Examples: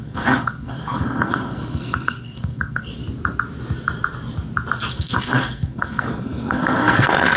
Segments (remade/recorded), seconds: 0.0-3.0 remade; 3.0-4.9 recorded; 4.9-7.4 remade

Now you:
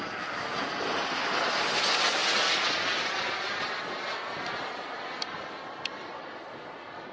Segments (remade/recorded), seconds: 0.0-7.1 recorded